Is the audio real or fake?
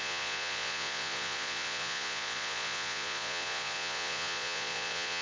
fake